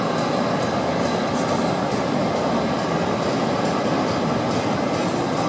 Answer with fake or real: real